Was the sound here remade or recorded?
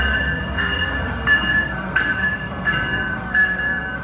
remade